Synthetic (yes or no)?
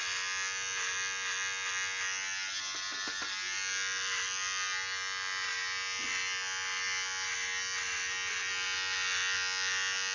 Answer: no